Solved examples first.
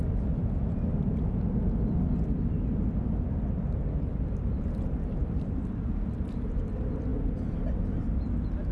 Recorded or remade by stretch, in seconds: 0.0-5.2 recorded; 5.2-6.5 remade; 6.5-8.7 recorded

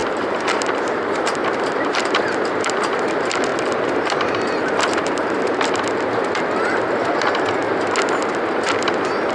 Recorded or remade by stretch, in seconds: 0.0-2.1 remade; 2.1-3.5 recorded; 3.5-5.7 remade; 5.7-9.3 recorded

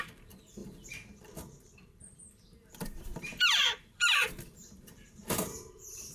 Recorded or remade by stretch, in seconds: 0.0-6.1 remade

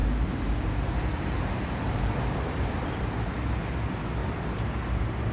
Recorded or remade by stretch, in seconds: 0.0-3.2 remade; 3.2-4.2 recorded; 4.2-5.3 remade